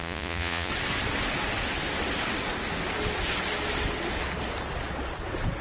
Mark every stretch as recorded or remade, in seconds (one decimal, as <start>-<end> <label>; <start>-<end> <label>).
0.0-0.7 remade; 0.7-5.6 recorded